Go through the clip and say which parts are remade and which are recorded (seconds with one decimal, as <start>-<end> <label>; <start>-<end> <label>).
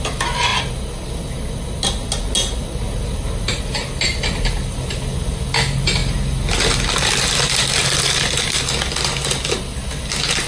0.0-10.5 recorded